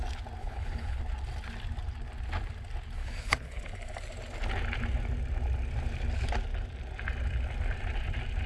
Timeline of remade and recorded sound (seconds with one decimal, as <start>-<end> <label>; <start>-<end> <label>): 0.0-0.4 recorded; 0.4-1.0 remade; 1.0-3.0 recorded; 3.0-3.6 remade; 3.6-8.5 recorded

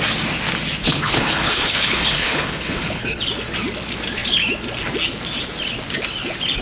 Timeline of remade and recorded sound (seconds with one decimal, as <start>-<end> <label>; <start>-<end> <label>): 0.0-0.8 recorded; 0.8-3.2 remade; 3.2-6.6 recorded

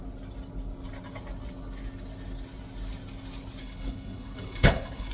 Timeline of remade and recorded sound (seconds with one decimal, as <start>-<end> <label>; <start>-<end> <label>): 0.0-3.6 recorded; 3.6-5.1 remade

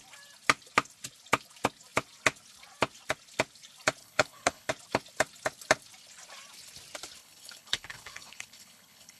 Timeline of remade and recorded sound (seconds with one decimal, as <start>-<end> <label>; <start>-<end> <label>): 0.0-4.0 recorded; 4.0-4.7 remade; 4.7-7.2 recorded; 7.2-9.2 remade